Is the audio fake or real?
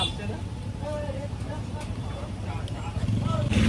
fake